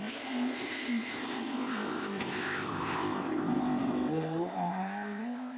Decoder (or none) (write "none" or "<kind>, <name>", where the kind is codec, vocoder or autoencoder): codec, ZipCodec